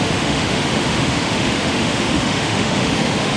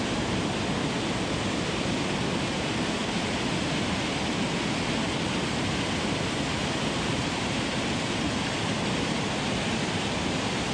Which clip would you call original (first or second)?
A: second